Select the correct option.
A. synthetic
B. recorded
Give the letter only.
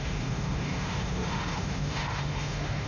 A